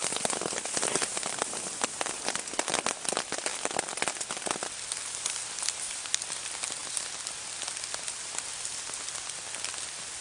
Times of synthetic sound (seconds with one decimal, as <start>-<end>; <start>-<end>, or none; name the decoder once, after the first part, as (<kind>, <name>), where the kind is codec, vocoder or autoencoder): none